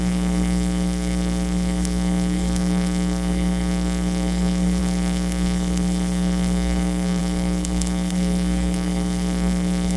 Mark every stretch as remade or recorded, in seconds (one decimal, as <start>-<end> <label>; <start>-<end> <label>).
0.0-10.0 remade